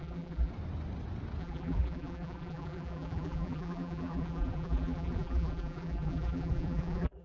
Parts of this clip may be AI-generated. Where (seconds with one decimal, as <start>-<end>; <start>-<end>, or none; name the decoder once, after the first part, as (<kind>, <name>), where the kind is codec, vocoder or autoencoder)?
0.0-0.5 (vocoder, BigVGAN v2); 1.4-7.2